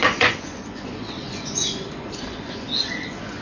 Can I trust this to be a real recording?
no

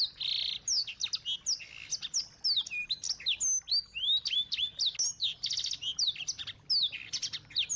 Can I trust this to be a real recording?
yes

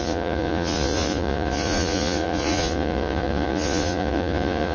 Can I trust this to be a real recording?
no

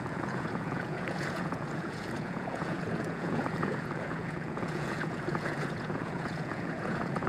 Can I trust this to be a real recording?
no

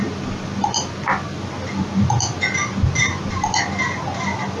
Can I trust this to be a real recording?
yes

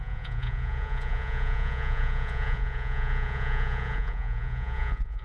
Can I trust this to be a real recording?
no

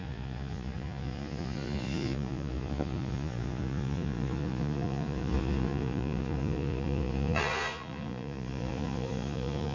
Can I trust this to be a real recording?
no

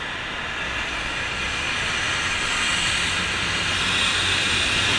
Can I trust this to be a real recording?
yes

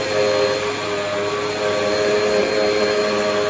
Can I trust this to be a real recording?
yes